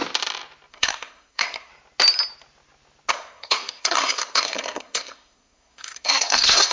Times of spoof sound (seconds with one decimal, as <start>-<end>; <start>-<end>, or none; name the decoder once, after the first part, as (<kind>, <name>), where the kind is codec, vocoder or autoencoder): 0.7-1.7 (codec, SNAC); 3.1-6.7